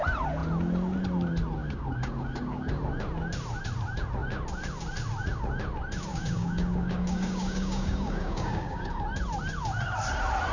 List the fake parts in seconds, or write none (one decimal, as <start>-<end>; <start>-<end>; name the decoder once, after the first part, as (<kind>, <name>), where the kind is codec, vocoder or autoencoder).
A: 1.6-2.7 (codec, DAC); 6.1-9.0